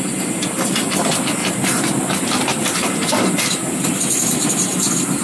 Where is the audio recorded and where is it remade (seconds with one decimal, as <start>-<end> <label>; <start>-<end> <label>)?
0.0-5.2 recorded